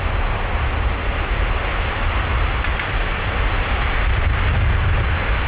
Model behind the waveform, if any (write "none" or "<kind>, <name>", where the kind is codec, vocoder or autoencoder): none